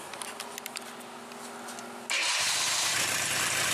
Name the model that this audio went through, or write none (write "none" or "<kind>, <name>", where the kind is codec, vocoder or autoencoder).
none